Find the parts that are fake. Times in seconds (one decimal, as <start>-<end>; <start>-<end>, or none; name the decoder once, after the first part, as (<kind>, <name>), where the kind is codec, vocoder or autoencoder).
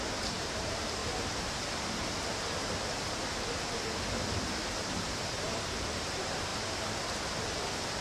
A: 0.0-1.0 (vocoder, BigVGAN v2); 4.7-6.5